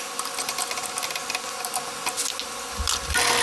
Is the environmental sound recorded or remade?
recorded